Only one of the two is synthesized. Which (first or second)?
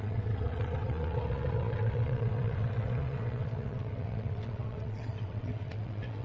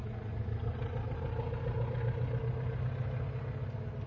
first